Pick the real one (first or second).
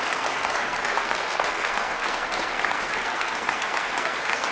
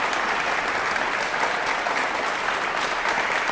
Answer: second